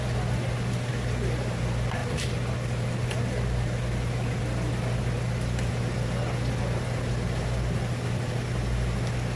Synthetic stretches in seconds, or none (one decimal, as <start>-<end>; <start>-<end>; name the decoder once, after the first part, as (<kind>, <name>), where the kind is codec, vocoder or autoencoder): none